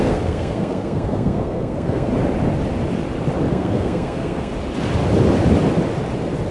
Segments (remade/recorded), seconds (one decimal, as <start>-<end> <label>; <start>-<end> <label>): 0.0-2.1 remade; 2.1-3.5 recorded; 3.5-4.5 remade; 4.5-6.5 recorded